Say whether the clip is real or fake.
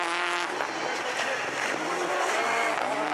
real